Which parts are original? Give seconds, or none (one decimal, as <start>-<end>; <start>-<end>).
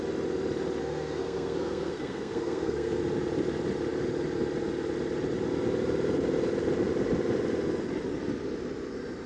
0.0-0.8; 3.0-9.3